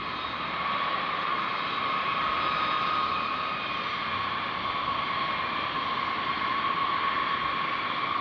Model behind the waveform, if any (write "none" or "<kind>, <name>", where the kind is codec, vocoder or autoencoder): vocoder, BigVGAN v2